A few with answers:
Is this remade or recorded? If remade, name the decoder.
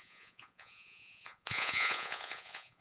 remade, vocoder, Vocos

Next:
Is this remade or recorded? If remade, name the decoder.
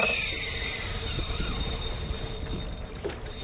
remade, vocoder, BigVGAN v2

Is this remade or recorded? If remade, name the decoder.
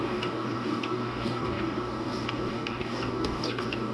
remade, codec, DAC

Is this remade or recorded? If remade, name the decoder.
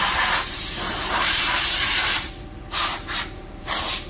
remade, vocoder, BigVGAN v2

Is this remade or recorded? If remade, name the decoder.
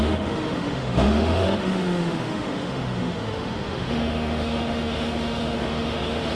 remade, autoencoder, DAC-VAE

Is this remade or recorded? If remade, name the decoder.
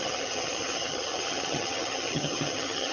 remade, vocoder, HiFi-GAN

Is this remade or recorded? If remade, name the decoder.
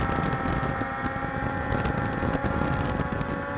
recorded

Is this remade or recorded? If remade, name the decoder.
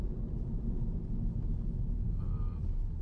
recorded